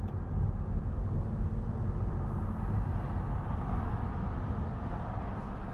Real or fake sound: real